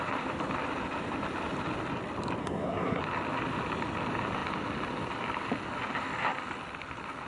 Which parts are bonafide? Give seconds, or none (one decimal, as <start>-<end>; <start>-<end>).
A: 0.0-2.4; 3.0-7.3